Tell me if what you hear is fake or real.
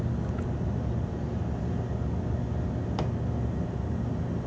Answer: real